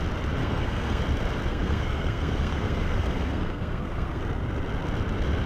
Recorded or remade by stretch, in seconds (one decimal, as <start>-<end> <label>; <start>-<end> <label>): 0.0-0.4 recorded; 0.4-1.0 remade; 1.0-1.5 recorded; 1.5-4.2 remade; 4.2-5.5 recorded